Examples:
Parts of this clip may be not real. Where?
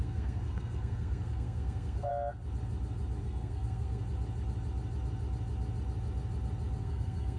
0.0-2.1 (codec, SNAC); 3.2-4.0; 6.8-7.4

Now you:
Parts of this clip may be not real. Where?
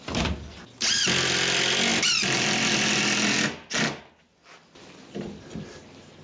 1.9-4.0 (vocoder, BigVGAN v2)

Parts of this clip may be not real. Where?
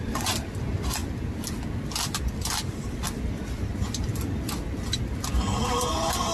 none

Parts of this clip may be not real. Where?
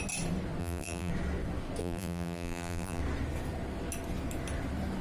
0.6-1.1 (vocoder, BigVGAN v2); 1.8-3.0